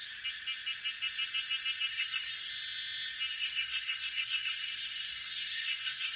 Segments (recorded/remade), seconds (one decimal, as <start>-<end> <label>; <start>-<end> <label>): 0.0-1.9 recorded; 1.9-2.5 remade; 2.5-3.3 recorded; 3.3-6.2 remade